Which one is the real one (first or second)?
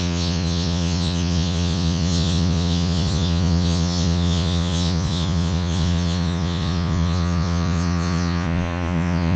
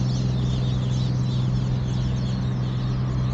second